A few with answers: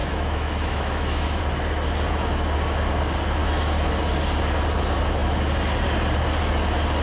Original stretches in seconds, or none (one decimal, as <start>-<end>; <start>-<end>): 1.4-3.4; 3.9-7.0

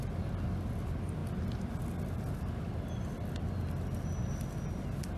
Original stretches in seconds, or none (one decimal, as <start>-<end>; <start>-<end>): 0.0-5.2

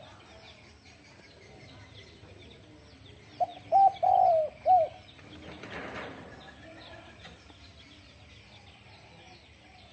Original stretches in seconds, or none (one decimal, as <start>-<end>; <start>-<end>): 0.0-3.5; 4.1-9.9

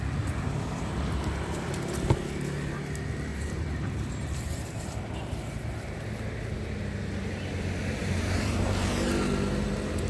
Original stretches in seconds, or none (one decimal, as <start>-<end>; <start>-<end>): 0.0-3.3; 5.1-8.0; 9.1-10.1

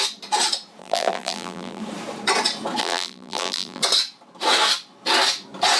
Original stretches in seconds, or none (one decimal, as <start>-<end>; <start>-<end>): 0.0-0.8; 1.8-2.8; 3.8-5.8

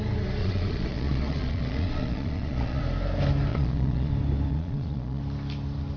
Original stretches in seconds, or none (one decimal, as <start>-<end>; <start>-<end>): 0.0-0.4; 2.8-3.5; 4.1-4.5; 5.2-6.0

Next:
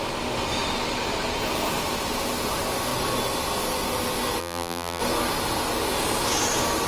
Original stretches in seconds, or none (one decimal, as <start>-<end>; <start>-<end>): 0.0-4.4; 5.0-6.9